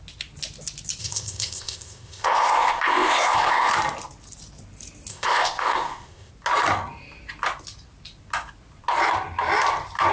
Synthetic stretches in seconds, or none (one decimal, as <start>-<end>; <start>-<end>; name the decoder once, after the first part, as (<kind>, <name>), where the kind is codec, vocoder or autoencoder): 1.0-3.7 (codec, ZipCodec); 5.1-6.3